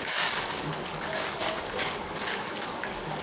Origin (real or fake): fake